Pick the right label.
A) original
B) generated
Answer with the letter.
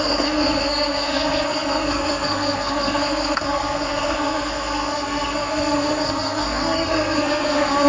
B